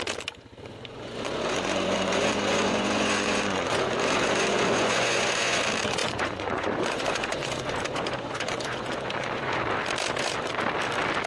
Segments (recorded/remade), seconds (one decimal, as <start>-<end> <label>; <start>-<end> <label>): 0.0-0.7 recorded; 0.7-5.6 remade; 5.6-6.0 recorded; 6.0-9.6 remade; 9.6-11.3 recorded